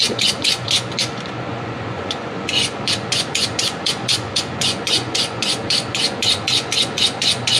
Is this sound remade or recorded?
remade